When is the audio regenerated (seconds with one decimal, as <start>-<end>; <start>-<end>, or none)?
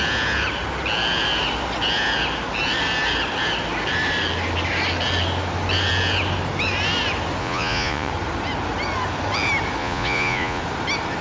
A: 7.4-8.1; 9.8-10.6